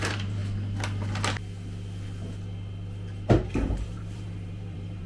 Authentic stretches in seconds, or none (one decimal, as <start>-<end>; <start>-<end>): 0.4-3.5

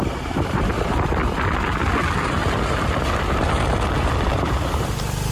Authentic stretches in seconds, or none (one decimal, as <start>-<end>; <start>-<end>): 1.2-4.0

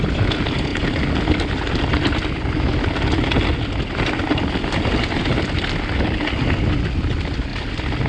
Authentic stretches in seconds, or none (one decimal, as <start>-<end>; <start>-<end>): 0.0-7.5